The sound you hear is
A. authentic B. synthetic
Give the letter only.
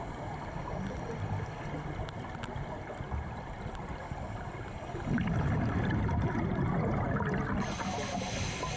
A